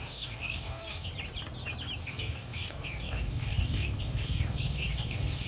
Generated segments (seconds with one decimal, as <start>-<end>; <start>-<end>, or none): 0.0-1.1; 2.0-5.5